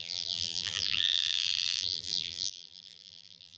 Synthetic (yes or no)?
yes